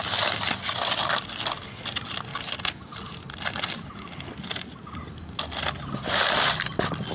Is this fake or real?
real